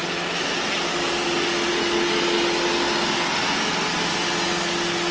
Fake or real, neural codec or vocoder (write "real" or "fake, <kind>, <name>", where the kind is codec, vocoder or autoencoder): real